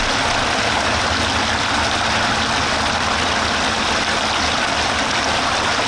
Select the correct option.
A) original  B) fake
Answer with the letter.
A